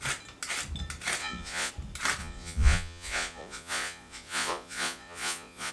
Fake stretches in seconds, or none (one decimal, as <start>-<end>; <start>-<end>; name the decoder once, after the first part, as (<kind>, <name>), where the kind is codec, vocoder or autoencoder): 1.2-1.7 (vocoder, Vocos); 2.2-5.7